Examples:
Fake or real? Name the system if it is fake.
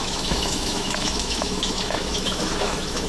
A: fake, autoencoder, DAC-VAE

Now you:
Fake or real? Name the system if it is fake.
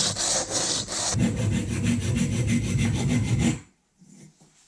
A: real